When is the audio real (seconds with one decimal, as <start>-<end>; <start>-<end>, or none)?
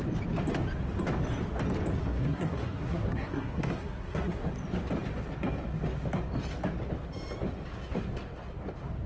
0.0-2.0; 4.5-9.1